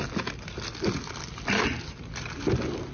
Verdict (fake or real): real